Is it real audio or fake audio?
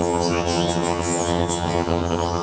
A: fake